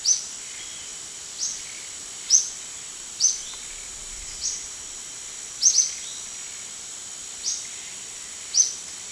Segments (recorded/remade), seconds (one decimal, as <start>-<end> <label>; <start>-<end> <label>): 0.0-9.1 recorded